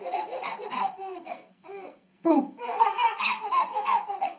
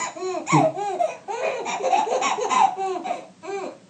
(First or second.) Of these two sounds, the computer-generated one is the first